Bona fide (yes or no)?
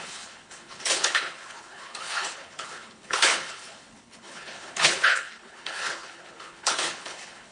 no